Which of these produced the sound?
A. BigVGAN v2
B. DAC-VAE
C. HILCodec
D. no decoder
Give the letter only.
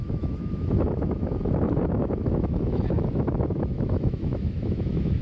B